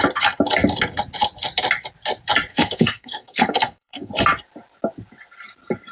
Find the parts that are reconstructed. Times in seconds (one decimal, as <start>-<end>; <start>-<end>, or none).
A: 2.5-4.1